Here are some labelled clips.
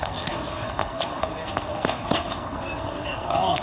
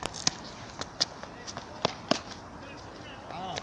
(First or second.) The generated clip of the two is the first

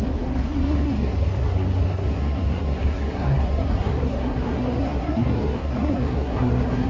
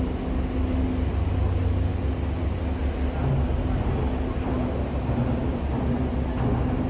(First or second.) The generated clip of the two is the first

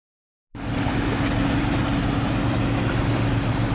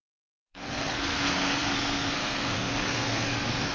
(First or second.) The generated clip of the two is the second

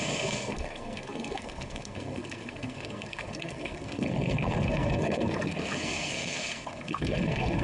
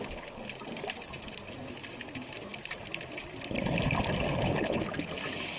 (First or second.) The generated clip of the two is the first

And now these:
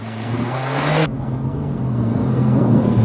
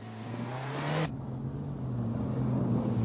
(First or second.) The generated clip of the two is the first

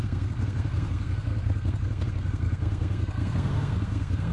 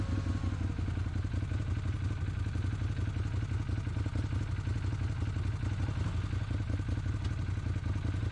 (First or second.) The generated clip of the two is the first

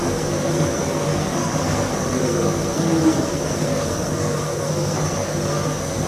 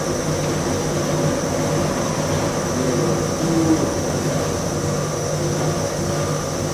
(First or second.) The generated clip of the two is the first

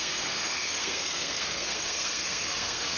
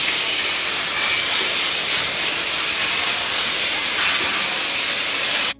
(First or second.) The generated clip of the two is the first